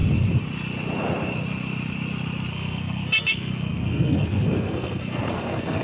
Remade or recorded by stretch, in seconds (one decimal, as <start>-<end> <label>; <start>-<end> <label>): 0.0-2.5 recorded; 2.5-5.8 remade